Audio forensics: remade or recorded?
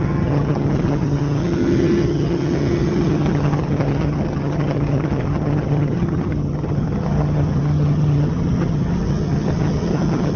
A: remade